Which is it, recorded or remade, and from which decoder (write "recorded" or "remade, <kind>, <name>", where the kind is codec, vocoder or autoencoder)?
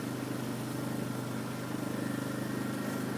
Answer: recorded